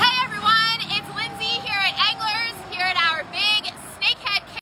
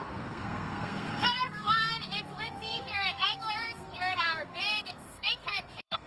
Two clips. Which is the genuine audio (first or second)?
first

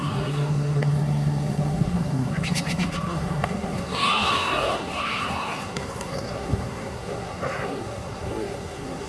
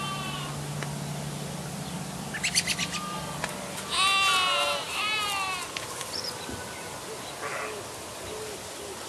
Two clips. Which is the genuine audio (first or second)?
second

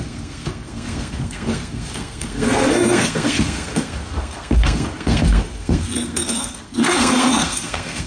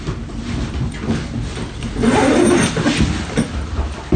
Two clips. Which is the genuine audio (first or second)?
second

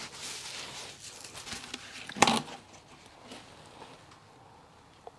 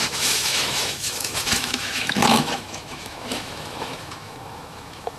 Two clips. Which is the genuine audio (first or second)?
first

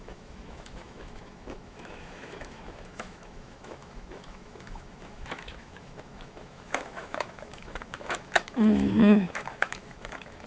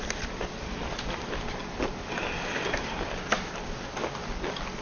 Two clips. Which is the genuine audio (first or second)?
second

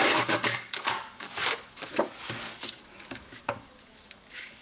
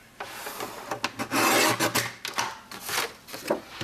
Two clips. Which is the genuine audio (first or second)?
second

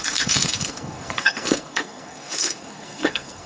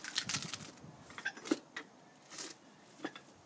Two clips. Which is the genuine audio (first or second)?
second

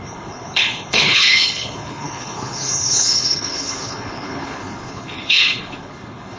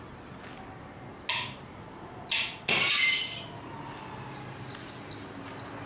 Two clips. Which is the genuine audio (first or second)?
second